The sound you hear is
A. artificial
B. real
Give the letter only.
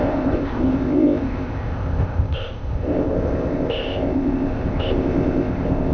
A